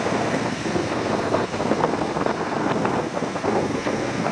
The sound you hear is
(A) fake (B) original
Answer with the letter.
A